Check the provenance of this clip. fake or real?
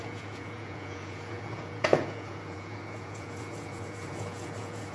fake